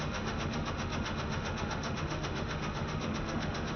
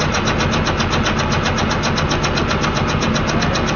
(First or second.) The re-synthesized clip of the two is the first